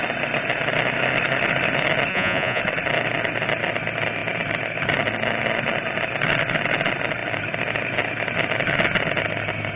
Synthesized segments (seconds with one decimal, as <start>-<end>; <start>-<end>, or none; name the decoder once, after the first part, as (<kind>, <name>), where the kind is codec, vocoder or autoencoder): 2.1-2.6 (vocoder, Vocos)